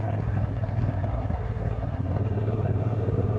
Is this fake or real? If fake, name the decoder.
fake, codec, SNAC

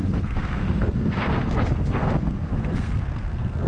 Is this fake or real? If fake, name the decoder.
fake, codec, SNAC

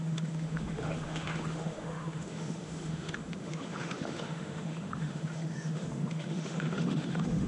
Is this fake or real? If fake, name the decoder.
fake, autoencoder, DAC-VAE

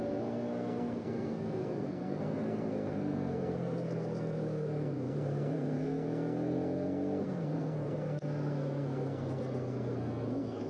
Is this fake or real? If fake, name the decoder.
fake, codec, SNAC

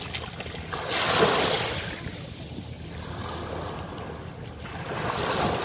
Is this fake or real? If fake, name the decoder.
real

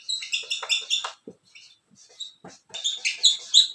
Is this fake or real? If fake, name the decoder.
real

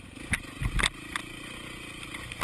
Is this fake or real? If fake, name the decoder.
real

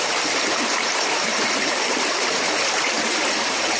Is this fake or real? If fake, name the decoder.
fake, vocoder, BigVGAN v2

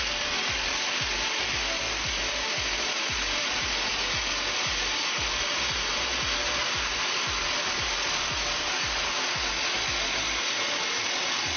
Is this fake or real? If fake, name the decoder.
real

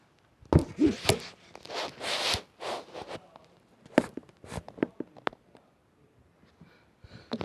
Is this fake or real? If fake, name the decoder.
real